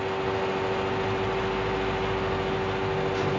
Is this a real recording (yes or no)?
yes